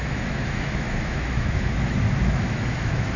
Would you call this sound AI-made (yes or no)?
yes